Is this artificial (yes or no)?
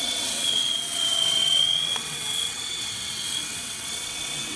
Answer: yes